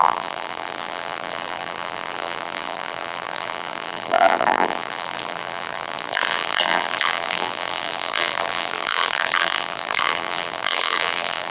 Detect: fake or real fake